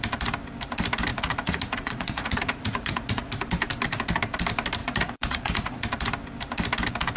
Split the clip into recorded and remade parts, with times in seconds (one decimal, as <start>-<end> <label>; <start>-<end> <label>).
0.0-1.1 recorded; 1.1-3.3 remade; 3.3-4.8 recorded; 4.8-5.8 remade; 5.8-7.2 recorded